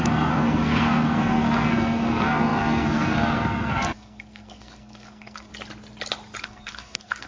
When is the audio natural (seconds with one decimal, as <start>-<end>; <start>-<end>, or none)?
5.5-6.4